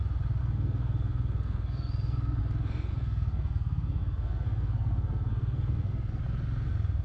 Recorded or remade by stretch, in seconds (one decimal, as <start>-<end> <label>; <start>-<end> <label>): 0.0-0.4 recorded; 0.4-2.4 remade; 2.4-2.9 recorded; 2.9-6.2 remade; 6.2-7.0 recorded